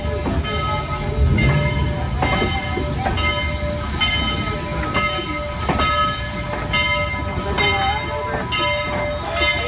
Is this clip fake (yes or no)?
no